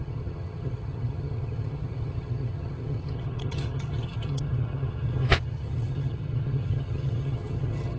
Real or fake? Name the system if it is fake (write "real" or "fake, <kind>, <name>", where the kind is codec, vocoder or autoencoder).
fake, vocoder, HiFi-GAN